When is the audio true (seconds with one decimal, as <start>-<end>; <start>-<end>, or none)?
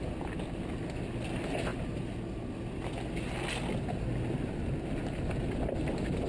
0.0-6.3